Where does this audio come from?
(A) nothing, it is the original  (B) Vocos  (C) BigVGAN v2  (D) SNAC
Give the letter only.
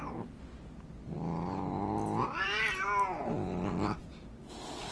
A